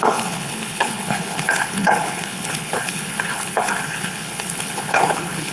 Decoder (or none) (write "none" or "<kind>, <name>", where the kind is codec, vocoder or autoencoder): codec, HILCodec